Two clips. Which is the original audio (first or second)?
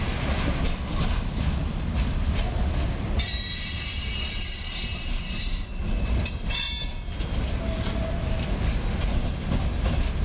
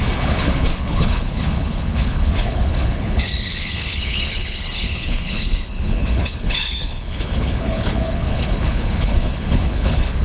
first